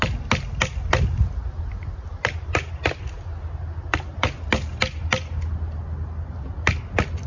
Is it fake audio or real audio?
real